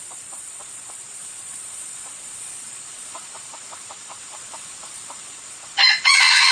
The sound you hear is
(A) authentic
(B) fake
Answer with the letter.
B